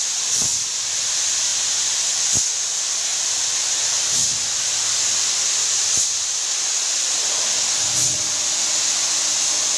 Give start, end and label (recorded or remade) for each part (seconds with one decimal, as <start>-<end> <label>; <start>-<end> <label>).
0.0-1.5 remade; 1.5-2.4 recorded; 2.4-4.2 remade; 4.2-9.4 recorded; 9.4-9.8 remade